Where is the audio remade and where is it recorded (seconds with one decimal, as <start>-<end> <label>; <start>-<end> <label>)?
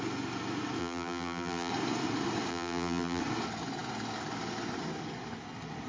0.0-0.8 recorded; 0.8-1.7 remade; 1.7-2.5 recorded; 2.5-3.2 remade; 3.2-5.9 recorded